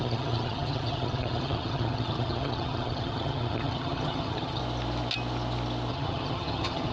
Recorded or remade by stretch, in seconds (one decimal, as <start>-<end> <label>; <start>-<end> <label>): 0.0-4.6 remade; 4.6-5.9 recorded; 5.9-6.9 remade